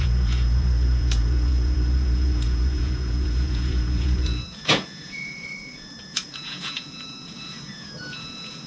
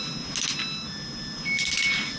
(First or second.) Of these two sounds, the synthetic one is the first